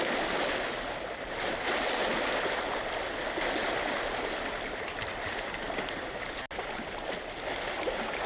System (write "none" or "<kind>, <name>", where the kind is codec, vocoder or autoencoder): none